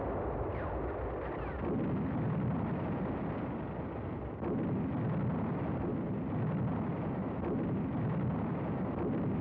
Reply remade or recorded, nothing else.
recorded